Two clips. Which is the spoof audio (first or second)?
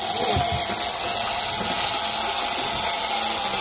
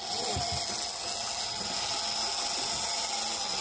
second